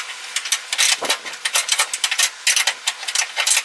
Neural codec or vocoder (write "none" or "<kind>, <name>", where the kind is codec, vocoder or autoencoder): none